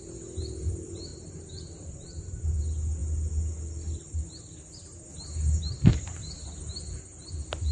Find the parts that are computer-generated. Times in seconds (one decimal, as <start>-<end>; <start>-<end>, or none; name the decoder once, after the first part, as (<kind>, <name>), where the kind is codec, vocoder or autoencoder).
1.1-2.6 (vocoder, BigVGAN v2); 5.1-7.0

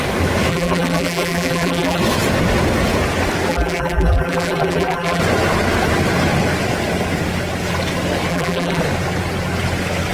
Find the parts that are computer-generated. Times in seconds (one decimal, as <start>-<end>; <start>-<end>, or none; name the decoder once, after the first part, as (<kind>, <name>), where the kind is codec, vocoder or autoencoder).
0.5-2.0 (vocoder, BigVGAN v2); 3.5-5.2; 8.3-8.8

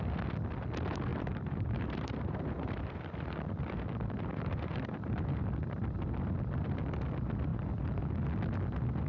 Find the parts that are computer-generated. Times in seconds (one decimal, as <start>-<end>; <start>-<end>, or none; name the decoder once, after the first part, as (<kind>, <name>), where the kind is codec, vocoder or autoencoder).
1.1-5.3 (vocoder, BigVGAN v2); 7.5-8.0